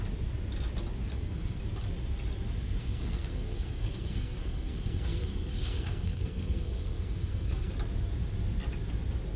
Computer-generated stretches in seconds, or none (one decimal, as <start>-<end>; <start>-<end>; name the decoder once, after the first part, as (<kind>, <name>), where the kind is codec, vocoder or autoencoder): 1.1-1.6 (codec, SNAC); 2.8-7.7